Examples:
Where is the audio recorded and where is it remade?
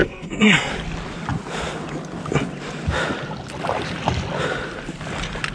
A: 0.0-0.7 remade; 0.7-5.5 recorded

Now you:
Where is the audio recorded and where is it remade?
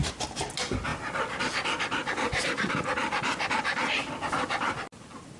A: 0.0-5.4 recorded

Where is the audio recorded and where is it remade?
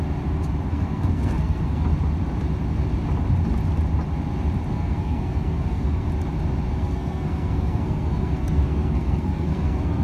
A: 0.0-0.7 recorded; 0.7-1.9 remade; 1.9-4.7 recorded; 4.7-6.1 remade; 6.1-6.7 recorded; 6.7-10.0 remade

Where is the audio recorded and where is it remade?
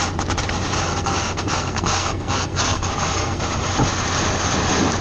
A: 0.0-0.9 recorded; 0.9-3.4 remade; 3.4-5.0 recorded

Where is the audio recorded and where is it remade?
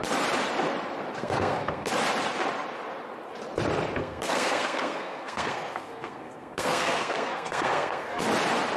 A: 0.0-1.2 recorded; 1.2-1.9 remade; 1.9-4.0 recorded; 4.0-8.2 remade; 8.2-8.8 recorded